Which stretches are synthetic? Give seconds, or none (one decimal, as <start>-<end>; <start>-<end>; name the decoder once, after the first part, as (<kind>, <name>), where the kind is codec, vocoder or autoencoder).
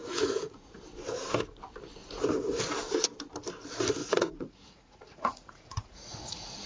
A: 0.0-0.8 (vocoder, Vocos); 2.0-2.6; 4.0-6.7